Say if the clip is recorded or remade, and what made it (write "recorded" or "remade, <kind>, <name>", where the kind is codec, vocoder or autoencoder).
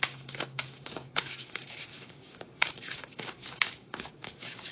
remade, codec, DAC